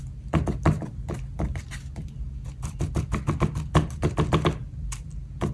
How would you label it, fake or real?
real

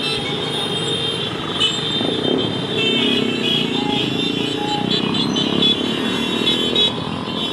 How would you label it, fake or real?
real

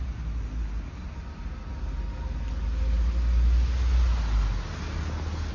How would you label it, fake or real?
real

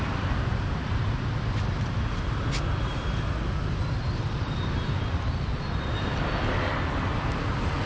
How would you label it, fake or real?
real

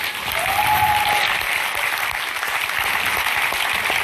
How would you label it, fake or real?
real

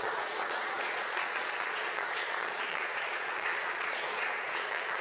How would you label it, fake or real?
fake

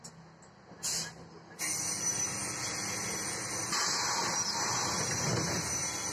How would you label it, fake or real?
real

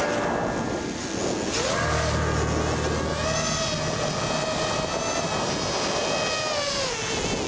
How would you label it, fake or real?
real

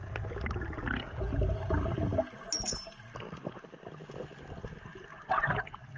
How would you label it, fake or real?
real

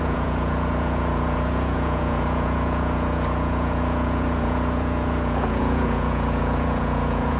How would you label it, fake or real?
fake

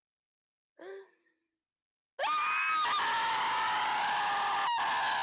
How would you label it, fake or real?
real